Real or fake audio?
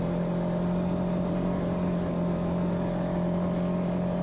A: real